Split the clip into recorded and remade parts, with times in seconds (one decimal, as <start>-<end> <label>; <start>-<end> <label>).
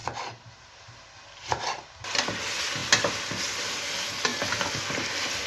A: 0.0-5.5 recorded